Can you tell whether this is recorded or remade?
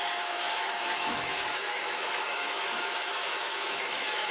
remade